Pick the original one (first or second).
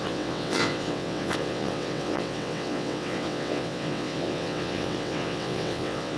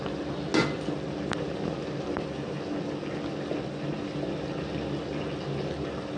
second